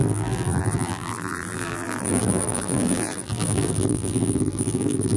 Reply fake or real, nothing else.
fake